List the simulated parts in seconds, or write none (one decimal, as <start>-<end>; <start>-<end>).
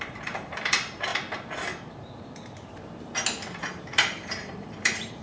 0.0-1.1; 3.6-5.2